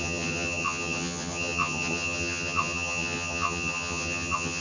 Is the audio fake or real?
fake